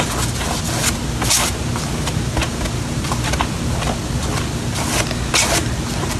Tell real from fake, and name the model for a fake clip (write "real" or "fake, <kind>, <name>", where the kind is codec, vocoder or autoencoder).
real